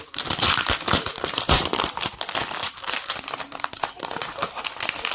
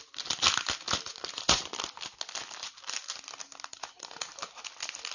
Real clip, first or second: second